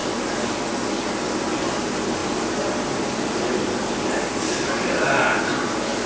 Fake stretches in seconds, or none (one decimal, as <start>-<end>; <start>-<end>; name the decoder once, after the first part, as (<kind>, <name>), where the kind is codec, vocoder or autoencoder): 2.2-5.4 (vocoder, BigVGAN v2)